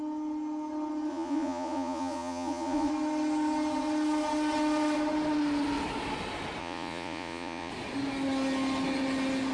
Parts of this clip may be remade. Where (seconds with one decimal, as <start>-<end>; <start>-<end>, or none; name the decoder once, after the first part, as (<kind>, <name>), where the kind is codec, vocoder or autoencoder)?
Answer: 1.1-2.9 (vocoder, Vocos); 6.6-7.7